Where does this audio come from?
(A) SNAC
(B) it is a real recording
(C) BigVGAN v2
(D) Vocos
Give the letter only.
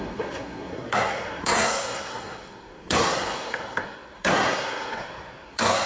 A